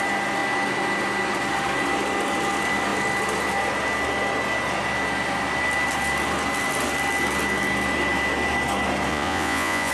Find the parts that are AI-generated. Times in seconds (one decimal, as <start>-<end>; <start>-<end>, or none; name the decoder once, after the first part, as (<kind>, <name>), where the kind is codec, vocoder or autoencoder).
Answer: 9.1-9.9 (vocoder, Vocos)